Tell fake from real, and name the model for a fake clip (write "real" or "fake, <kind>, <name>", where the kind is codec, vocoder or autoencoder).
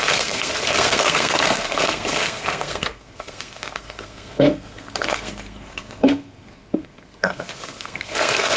fake, codec, SNAC